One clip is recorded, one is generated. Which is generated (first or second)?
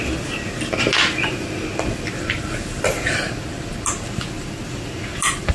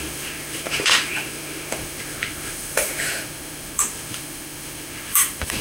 second